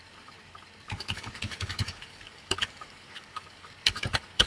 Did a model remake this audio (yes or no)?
yes